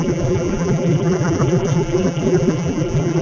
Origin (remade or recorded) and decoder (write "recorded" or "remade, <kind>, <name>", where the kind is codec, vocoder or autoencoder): remade, vocoder, BigVGAN v2